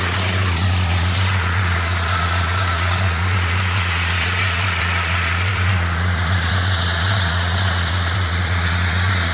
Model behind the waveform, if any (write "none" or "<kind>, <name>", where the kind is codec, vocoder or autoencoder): vocoder, Vocos